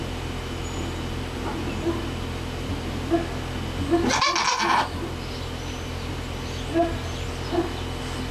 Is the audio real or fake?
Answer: real